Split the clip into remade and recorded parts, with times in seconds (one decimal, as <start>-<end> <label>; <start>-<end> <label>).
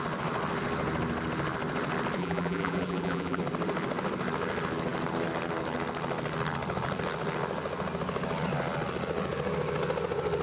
0.0-2.2 recorded; 2.2-3.4 remade; 3.4-10.4 recorded